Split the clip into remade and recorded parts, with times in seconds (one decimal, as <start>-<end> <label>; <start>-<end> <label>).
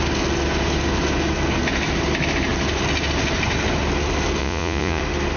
0.0-4.4 recorded; 4.4-5.0 remade; 5.0-5.4 recorded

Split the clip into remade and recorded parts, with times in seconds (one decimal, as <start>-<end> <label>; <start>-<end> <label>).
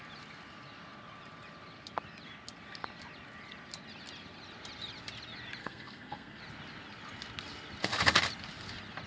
0.0-5.6 recorded; 5.6-6.4 remade; 6.4-9.1 recorded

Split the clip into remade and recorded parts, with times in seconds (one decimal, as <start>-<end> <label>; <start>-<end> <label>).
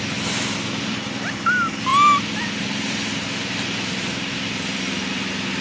0.0-5.6 recorded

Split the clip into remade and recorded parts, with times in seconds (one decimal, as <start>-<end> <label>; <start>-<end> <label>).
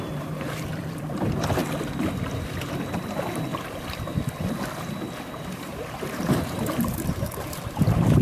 0.0-1.6 remade; 1.6-5.3 recorded; 5.3-8.2 remade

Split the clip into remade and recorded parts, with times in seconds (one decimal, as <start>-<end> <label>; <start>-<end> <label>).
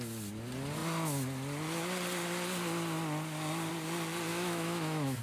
0.0-4.3 recorded; 4.3-5.2 remade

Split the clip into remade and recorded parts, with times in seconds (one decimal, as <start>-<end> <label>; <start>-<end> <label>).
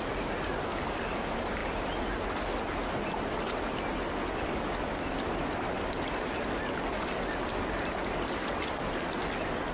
0.0-9.7 recorded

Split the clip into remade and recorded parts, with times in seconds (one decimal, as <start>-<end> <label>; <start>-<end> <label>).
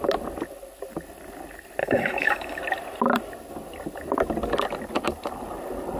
0.0-1.8 recorded; 1.8-2.6 remade; 2.6-6.0 recorded